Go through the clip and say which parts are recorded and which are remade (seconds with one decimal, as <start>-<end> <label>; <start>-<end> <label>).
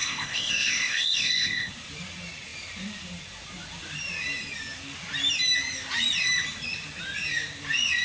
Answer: 0.0-1.7 remade; 1.7-8.0 recorded